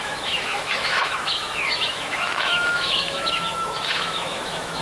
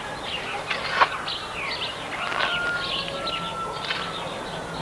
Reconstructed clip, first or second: first